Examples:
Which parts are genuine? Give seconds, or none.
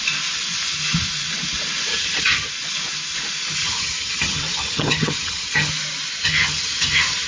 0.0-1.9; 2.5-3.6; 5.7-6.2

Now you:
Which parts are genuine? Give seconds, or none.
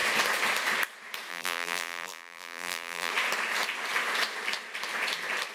0.0-1.3; 3.1-5.5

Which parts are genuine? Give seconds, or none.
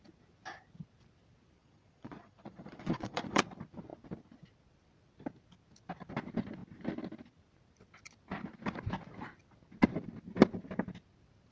0.0-1.6; 3.4-11.5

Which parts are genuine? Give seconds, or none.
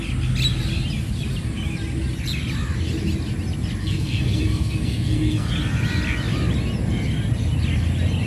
0.0-3.8; 5.5-8.3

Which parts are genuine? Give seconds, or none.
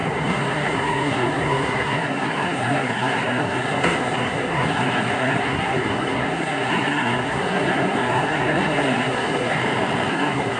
9.6-10.1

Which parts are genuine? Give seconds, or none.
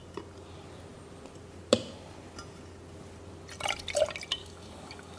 0.0-4.4